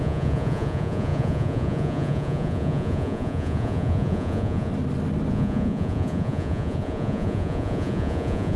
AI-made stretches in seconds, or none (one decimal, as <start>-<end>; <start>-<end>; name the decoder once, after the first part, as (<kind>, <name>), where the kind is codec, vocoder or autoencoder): 0.0-4.7 (vocoder, Vocos); 5.3-8.6